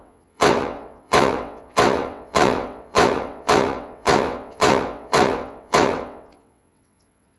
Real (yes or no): no